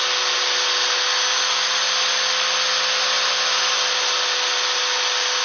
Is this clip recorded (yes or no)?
yes